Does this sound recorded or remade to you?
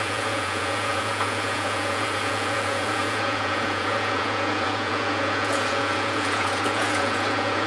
remade